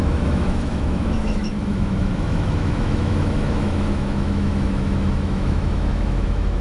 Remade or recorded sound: remade